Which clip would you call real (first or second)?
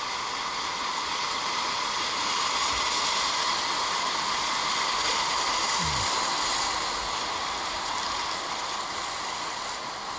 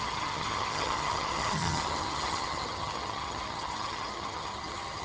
first